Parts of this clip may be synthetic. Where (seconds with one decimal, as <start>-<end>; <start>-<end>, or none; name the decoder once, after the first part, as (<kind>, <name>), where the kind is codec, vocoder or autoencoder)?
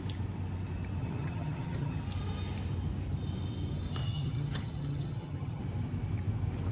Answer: 1.0-2.0 (vocoder, HiFi-GAN); 4.0-5.6